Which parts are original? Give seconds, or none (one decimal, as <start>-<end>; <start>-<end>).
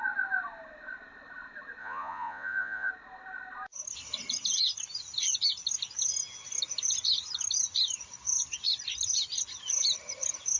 0.0-1.8; 2.9-10.6